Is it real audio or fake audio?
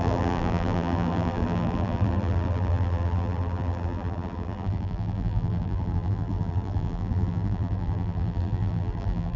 fake